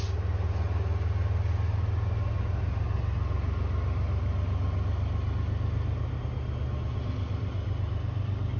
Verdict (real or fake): real